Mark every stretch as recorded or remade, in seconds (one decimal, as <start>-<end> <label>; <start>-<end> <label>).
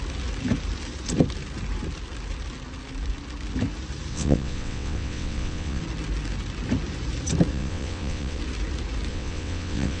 0.0-4.1 recorded; 4.1-5.8 remade; 5.8-7.5 recorded; 7.5-8.4 remade; 8.4-9.1 recorded; 9.1-10.0 remade